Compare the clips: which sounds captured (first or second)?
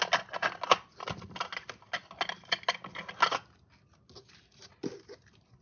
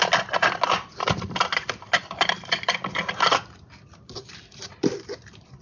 first